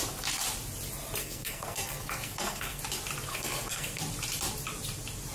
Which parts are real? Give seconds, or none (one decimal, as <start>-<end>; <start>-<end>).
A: 0.0-1.2; 2.8-3.3; 4.0-5.3